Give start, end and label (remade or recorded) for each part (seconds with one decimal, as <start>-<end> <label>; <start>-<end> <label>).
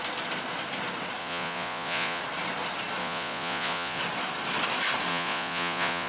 0.0-1.2 recorded; 1.2-2.2 remade; 2.2-3.0 recorded; 3.0-4.0 remade; 4.0-5.1 recorded; 5.1-6.1 remade